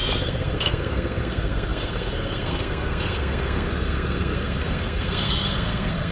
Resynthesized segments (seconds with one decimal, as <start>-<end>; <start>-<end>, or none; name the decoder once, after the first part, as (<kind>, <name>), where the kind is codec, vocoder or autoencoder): 0.0-6.1 (codec, SNAC)